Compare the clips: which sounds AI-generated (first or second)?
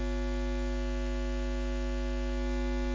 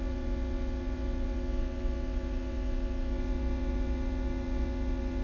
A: second